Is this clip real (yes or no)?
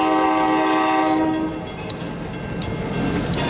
yes